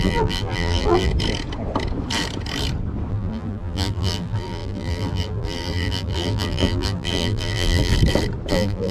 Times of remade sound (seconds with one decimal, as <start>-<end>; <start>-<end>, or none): 0.0-1.1; 3.1-7.9; 8.5-8.9